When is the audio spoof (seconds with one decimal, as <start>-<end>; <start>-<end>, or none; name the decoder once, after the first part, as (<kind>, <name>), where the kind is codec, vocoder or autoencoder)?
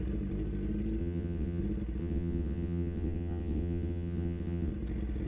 1.0-1.6 (vocoder, WaveNeXt); 2.0-4.7